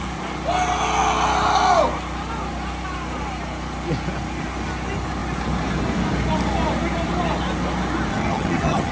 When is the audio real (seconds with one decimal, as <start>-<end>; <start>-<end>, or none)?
0.0-8.1